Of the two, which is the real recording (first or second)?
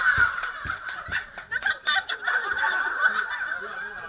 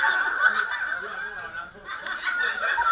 second